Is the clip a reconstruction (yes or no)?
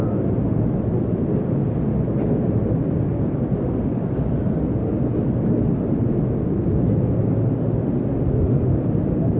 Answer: no